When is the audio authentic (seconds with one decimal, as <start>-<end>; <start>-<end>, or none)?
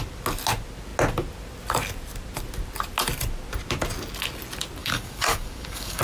0.0-4.8